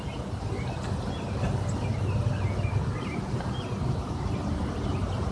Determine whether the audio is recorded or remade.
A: recorded